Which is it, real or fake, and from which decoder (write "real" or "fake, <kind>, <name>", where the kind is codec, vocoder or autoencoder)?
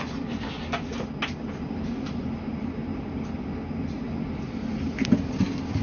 real